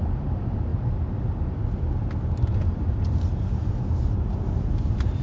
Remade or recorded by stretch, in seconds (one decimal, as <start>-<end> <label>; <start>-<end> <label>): 0.0-0.7 remade; 0.7-3.8 recorded; 3.8-5.2 remade